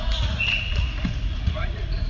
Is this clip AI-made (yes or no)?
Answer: yes